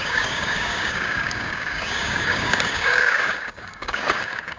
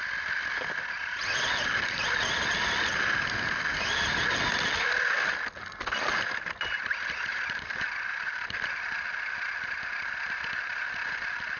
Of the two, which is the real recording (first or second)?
second